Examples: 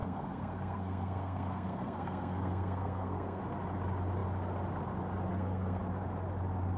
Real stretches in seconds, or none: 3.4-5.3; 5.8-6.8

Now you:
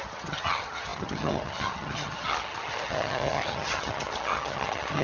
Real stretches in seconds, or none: none

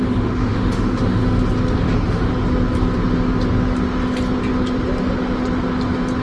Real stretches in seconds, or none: 1.2-1.8; 2.3-6.2

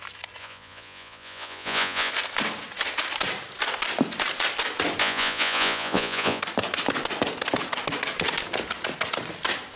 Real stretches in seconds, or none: 0.0-0.4; 2.1-5.0; 6.4-9.8

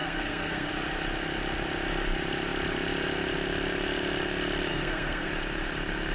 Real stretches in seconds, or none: 0.7-4.7; 5.3-6.1

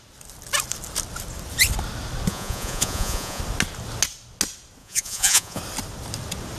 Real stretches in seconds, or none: 0.0-2.3; 3.4-4.8; 5.6-6.6